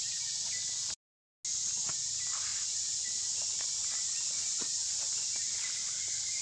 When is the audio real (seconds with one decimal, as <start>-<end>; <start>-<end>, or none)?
0.0-6.4